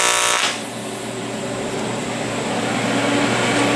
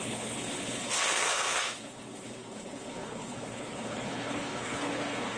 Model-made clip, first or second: second